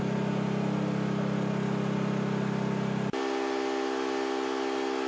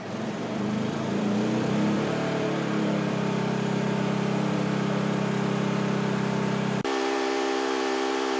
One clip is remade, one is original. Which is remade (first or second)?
second